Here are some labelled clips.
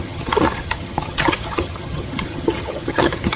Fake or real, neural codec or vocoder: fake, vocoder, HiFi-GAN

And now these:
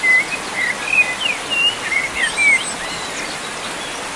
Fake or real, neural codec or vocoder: real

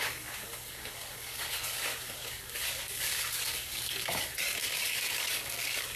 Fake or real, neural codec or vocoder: fake, codec, DAC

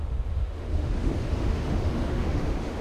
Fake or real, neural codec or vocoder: fake, autoencoder, DAC-VAE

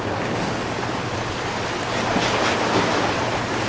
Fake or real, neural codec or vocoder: real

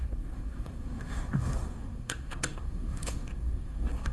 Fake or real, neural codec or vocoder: fake, codec, SNAC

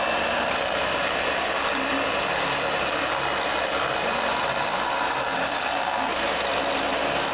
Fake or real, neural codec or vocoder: fake, vocoder, BigVGAN v2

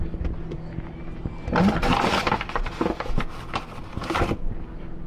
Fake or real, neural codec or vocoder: real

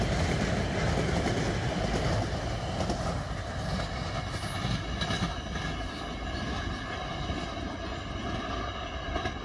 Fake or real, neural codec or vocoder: real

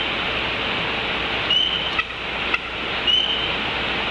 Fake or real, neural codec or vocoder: real